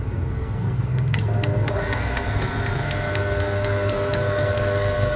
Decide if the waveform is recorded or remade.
remade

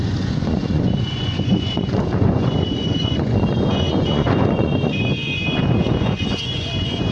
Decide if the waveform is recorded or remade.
remade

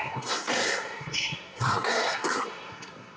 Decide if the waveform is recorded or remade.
remade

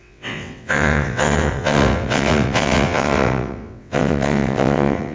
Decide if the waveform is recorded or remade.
remade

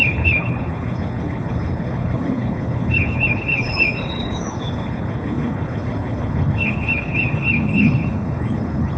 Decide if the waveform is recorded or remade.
remade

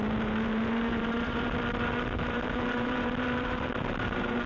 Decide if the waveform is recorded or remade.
remade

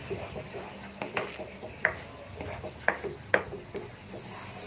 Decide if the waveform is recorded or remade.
recorded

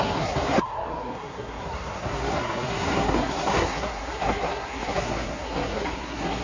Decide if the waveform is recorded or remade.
remade